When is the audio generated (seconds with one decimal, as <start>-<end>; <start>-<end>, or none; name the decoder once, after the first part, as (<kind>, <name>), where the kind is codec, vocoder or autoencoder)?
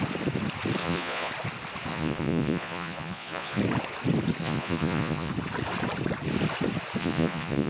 0.8-1.3 (vocoder, Vocos); 1.9-3.6; 4.4-5.3; 7.0-7.7